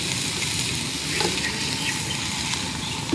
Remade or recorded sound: recorded